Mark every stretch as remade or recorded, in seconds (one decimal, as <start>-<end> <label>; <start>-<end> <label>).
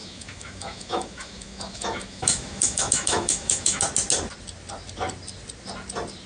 0.0-3.8 remade; 3.8-6.3 recorded